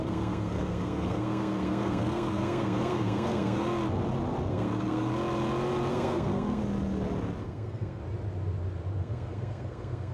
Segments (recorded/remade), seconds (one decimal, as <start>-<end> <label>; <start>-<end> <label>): 0.0-3.7 remade; 3.7-4.5 recorded; 4.5-5.1 remade; 5.1-5.9 recorded; 5.9-6.6 remade; 6.6-7.4 recorded; 7.4-8.0 remade; 8.0-9.0 recorded; 9.0-10.1 remade